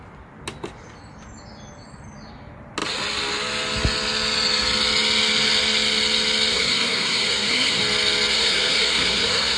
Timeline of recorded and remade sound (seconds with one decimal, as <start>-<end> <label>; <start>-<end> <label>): 0.0-6.5 recorded; 6.5-7.8 remade; 7.8-8.3 recorded; 8.3-9.6 remade